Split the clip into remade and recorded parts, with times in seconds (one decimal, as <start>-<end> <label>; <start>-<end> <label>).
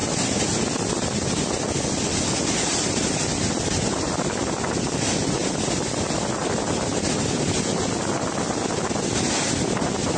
0.0-10.2 recorded